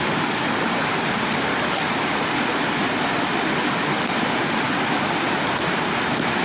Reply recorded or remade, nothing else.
recorded